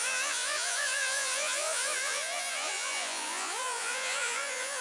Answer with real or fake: fake